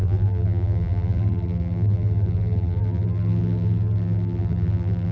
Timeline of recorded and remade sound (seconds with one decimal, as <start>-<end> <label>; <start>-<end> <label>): 0.0-5.1 remade